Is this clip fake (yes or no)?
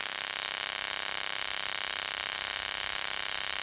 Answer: no